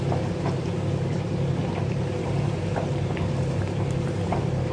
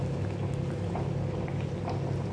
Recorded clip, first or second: second